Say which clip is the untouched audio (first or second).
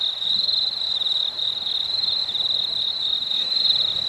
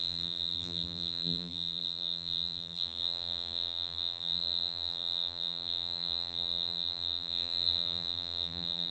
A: first